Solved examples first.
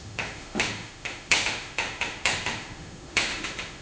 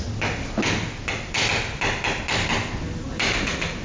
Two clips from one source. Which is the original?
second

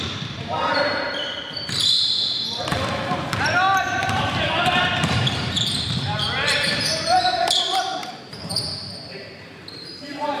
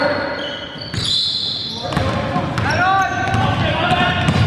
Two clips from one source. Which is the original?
second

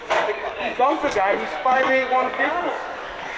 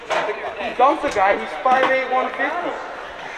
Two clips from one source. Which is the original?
second